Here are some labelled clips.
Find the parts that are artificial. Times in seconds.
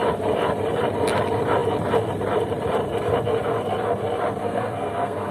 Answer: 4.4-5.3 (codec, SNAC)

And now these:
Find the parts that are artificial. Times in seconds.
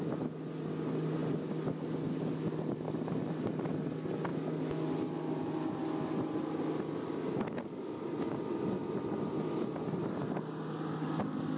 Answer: none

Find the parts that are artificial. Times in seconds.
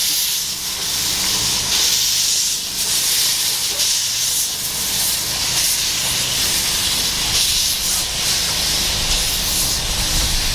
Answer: 0.0-1.0 (vocoder, BigVGAN v2)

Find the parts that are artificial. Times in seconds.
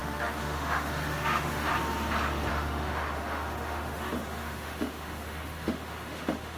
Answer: 0.0-1.7 (autoencoder, DAC-VAE); 2.5-6.6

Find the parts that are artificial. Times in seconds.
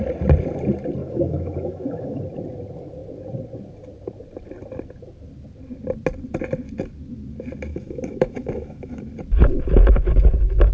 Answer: 1.0-2.2 (autoencoder, DAC-VAE); 7.7-9.0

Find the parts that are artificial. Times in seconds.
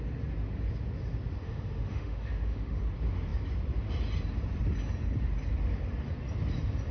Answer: 1.4-2.8 (autoencoder, DAC-VAE)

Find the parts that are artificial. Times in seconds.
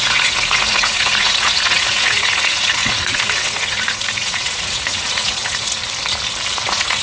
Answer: 0.0-5.8 (vocoder, Vocos); 6.5-7.0